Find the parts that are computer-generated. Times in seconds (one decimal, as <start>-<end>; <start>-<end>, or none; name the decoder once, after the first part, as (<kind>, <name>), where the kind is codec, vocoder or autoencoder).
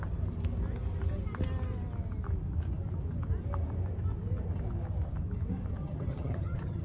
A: 5.8-6.8 (vocoder, HiFi-GAN)